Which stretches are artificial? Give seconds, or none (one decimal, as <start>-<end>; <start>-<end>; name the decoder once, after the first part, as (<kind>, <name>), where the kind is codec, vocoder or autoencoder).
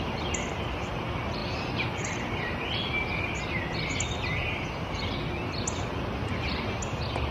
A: none